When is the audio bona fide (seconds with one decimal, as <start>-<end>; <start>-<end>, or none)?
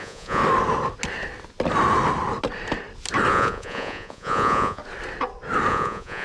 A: 0.4-3.3; 4.8-5.7